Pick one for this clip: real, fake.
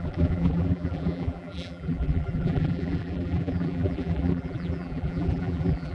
fake